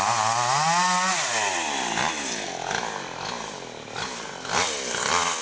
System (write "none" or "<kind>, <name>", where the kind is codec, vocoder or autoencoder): none